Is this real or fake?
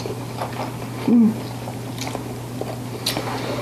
real